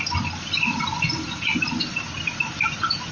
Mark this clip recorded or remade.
recorded